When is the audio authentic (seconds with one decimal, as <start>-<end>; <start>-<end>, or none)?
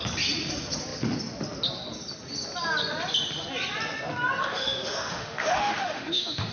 0.0-4.4